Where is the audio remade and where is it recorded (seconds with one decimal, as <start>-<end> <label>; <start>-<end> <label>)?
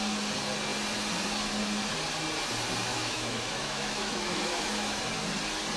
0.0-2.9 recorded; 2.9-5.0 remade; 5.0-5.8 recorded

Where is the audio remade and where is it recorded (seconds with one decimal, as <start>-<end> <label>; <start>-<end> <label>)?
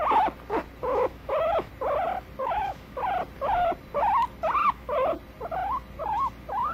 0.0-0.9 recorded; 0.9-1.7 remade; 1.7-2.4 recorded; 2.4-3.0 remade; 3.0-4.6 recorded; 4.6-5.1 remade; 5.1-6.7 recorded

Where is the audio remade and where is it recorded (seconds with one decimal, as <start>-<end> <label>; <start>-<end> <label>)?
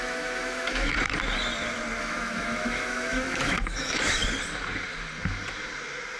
0.0-0.9 remade; 0.9-2.0 recorded; 2.0-4.2 remade; 4.2-6.2 recorded